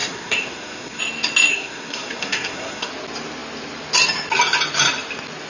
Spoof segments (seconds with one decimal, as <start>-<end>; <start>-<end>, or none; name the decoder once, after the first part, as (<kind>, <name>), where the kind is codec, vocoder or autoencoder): 0.0-1.0 (codec, SNAC); 1.5-2.9